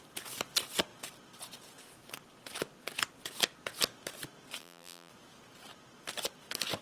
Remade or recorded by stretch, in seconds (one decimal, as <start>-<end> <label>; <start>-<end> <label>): 0.0-4.6 recorded; 4.6-5.1 remade; 5.1-6.8 recorded